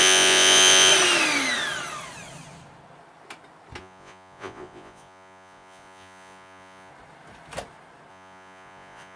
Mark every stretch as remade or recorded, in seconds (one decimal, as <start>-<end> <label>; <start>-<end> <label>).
0.0-0.9 remade; 0.9-3.8 recorded; 3.8-6.9 remade; 6.9-8.1 recorded; 8.1-9.2 remade